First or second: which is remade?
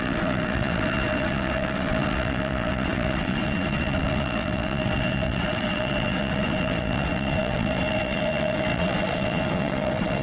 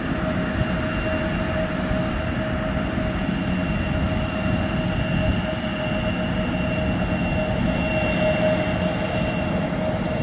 first